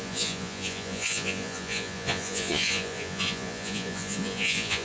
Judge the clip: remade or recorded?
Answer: remade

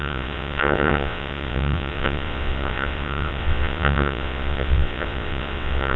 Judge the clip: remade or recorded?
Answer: remade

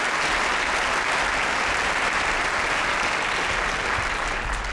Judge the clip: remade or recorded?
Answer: recorded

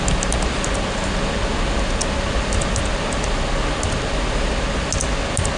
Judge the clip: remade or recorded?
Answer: recorded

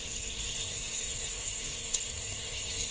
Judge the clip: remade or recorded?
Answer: remade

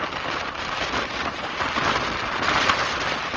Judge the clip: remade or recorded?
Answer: recorded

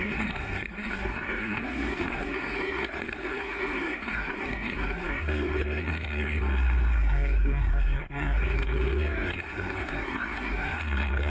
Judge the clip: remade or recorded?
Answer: remade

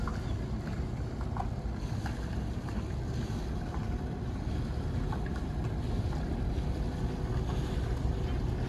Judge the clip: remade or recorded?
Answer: recorded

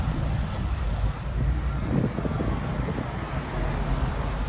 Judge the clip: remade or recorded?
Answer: recorded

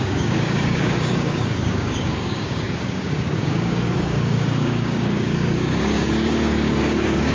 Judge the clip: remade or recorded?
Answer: remade